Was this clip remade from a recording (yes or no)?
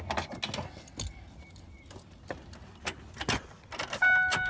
no